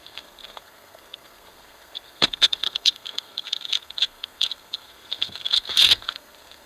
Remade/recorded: remade